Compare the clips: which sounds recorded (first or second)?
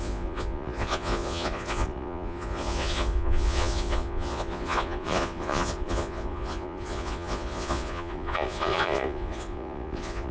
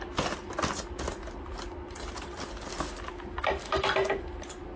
second